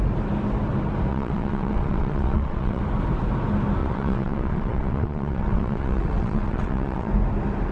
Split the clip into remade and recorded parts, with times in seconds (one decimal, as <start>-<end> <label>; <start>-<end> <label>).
0.0-1.1 recorded; 1.1-2.8 remade; 2.8-3.8 recorded; 3.8-7.1 remade; 7.1-7.7 recorded